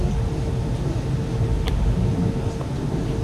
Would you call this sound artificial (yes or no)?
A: no